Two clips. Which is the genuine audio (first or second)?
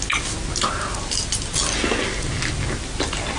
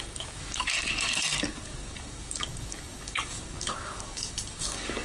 first